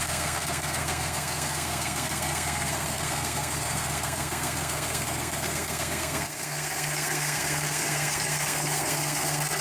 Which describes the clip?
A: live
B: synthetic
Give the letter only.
B